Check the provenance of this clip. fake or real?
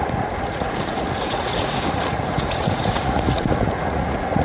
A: fake